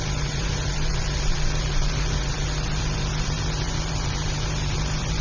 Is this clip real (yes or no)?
no